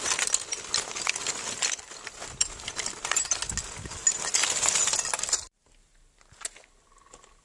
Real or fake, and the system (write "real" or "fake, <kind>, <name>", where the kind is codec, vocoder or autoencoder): real